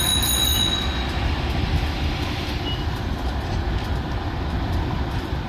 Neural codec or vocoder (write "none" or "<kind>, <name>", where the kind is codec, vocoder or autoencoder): none